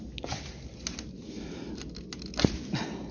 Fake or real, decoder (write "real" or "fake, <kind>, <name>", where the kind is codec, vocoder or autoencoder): real